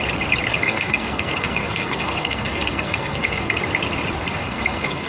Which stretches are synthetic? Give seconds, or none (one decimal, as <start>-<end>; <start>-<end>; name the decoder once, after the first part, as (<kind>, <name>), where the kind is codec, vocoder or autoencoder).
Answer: 0.5-3.6 (codec, SNAC); 4.4-5.1